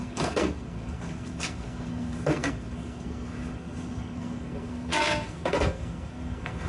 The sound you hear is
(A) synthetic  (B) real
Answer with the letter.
A